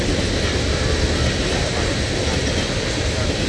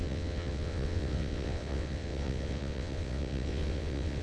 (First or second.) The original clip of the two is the first